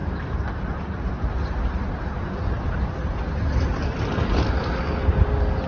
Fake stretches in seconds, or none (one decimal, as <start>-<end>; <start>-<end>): none